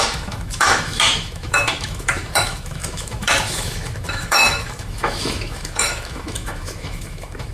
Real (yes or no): no